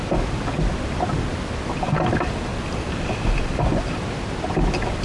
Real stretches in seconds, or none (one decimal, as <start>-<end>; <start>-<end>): 0.0-5.0